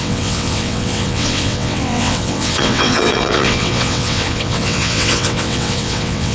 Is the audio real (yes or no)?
no